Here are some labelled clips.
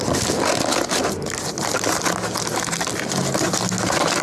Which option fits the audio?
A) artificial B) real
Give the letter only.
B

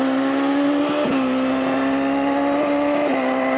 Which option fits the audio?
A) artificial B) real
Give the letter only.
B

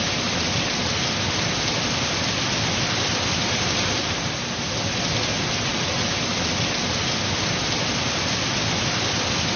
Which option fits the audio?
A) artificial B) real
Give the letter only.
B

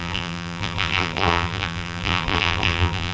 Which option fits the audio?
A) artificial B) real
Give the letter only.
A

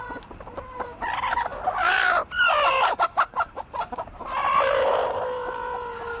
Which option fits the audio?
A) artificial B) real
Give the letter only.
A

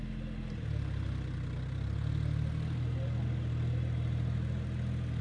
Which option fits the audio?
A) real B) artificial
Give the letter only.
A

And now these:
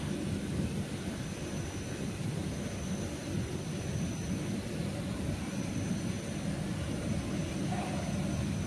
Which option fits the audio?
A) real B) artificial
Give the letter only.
A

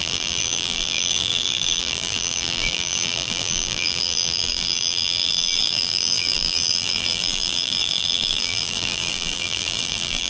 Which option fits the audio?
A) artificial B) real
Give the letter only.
A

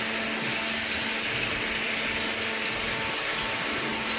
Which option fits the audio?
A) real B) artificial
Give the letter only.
A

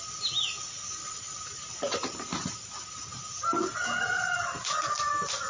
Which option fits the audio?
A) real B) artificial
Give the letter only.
A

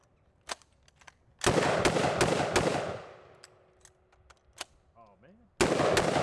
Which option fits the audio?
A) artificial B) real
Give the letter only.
B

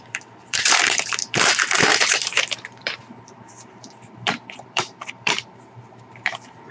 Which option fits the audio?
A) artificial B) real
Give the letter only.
A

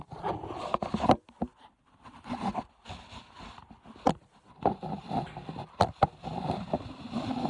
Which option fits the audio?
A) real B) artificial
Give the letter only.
B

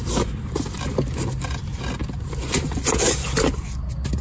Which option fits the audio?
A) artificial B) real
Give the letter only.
B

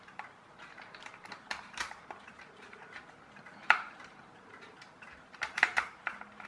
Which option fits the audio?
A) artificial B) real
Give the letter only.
A